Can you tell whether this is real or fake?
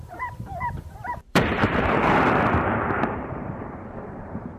fake